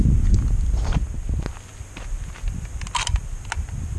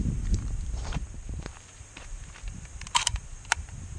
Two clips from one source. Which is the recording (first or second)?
first